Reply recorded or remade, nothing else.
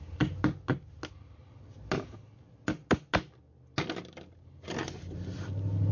recorded